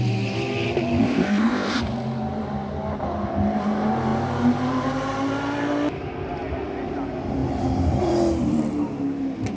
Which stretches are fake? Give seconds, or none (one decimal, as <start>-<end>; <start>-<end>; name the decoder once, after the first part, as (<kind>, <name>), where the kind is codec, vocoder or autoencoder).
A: 1.0-1.8 (codec, ZipCodec)